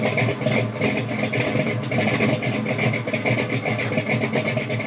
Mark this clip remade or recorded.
recorded